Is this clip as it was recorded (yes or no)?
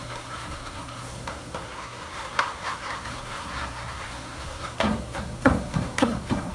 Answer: no